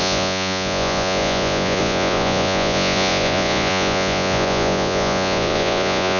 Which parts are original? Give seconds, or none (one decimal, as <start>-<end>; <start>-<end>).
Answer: none